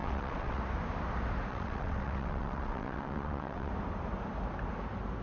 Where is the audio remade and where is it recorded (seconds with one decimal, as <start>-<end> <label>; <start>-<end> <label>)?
0.0-0.6 remade; 0.6-1.5 recorded; 1.5-3.7 remade; 3.7-5.2 recorded